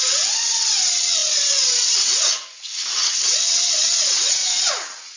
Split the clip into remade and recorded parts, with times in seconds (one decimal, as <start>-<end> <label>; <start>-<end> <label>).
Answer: 0.0-5.2 remade